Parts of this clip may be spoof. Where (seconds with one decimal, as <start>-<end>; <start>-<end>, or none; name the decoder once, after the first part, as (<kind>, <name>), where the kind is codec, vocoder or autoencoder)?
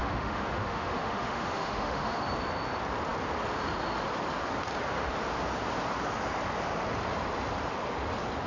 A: 0.0-2.2 (autoencoder, DAC-VAE)